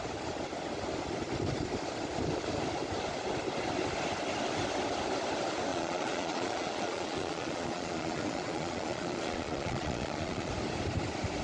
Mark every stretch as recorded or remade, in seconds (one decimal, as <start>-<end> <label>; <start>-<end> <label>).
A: 0.0-5.7 recorded; 5.7-10.5 remade; 10.5-11.4 recorded